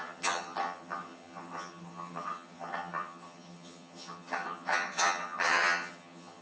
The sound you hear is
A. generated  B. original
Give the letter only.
A